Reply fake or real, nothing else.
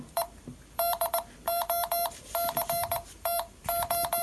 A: fake